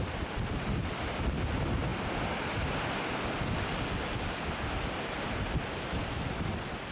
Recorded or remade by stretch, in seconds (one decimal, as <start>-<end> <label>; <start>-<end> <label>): 0.0-6.9 recorded

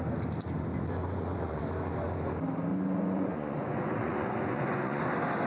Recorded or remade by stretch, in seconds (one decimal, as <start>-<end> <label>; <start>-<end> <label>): 0.0-1.0 recorded; 1.0-1.6 remade; 1.6-2.7 recorded; 2.7-5.0 remade; 5.0-5.5 recorded